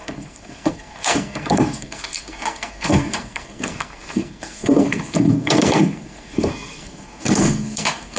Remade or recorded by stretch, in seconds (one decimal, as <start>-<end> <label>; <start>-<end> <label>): 0.0-8.2 remade